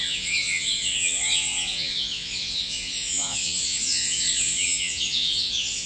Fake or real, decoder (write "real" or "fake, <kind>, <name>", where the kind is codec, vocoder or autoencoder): fake, vocoder, Vocos